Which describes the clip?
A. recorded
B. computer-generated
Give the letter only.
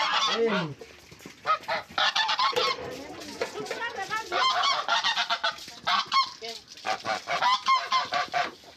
A